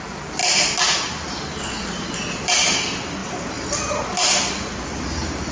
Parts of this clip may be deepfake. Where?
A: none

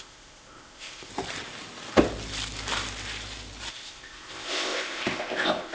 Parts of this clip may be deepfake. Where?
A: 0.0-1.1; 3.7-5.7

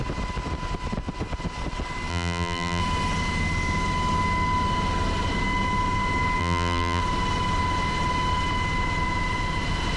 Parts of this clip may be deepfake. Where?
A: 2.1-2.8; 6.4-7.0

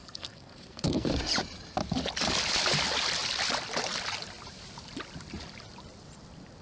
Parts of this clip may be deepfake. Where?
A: 0.0-1.1

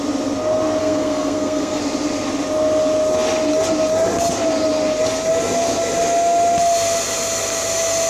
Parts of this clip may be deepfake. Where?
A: 0.8-1.8

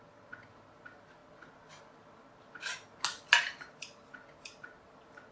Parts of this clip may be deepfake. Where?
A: none